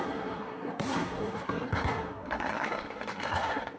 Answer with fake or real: fake